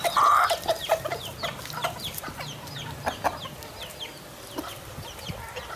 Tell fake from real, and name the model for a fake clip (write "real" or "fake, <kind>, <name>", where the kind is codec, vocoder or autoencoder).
real